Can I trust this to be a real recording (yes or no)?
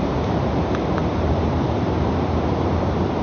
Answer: no